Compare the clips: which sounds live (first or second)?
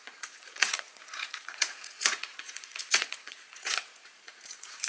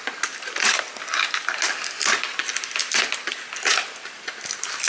second